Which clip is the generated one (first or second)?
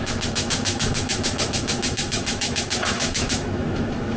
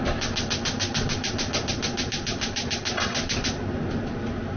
first